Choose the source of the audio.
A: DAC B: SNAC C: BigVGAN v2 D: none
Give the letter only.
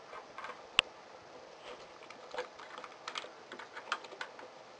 D